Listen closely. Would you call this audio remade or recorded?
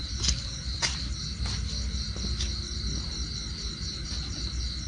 recorded